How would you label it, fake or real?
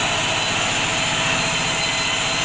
real